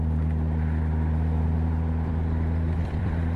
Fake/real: fake